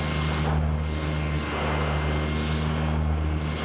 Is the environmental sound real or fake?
real